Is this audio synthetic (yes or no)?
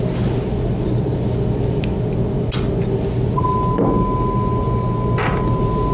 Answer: no